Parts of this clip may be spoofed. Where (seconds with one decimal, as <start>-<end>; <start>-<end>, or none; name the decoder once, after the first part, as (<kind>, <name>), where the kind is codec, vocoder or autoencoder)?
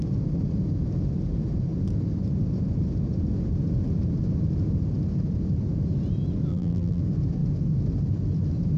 6.5-7.0 (vocoder, BigVGAN v2)